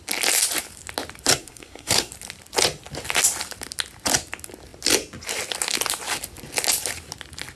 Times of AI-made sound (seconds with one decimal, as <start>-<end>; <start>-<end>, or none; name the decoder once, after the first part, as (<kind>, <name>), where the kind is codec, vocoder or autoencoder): 1.4-2.1 (codec, SNAC)